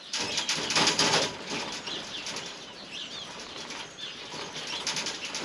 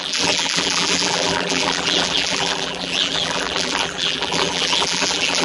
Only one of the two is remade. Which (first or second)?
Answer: second